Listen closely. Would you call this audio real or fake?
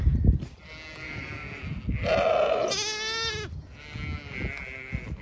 real